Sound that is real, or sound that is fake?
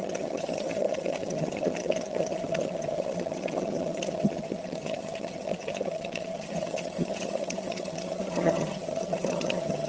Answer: fake